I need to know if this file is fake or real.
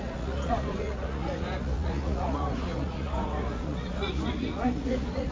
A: fake